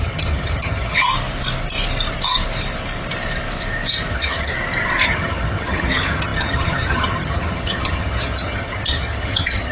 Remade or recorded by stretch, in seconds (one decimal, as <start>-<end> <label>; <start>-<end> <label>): 0.0-1.0 remade; 1.0-4.1 recorded; 4.1-4.5 remade; 4.5-5.0 recorded; 5.0-9.7 remade